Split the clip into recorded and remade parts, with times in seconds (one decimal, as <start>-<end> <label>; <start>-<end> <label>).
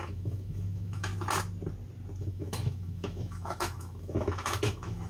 0.0-1.1 remade; 1.1-2.2 recorded; 2.2-5.1 remade